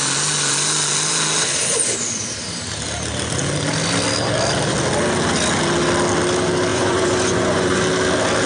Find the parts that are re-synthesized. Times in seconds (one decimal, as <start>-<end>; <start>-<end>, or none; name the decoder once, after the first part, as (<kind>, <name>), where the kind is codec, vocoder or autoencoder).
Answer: 6.7-7.8 (vocoder, Vocos)